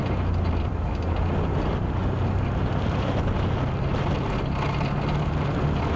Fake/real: real